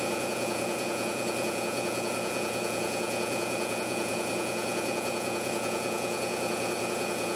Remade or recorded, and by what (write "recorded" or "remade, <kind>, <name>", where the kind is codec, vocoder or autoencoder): remade, vocoder, Vocos